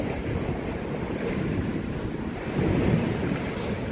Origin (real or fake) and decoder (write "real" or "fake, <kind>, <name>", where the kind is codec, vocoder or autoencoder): real